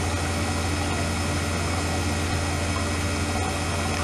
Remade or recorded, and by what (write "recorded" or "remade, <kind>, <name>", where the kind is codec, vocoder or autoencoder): recorded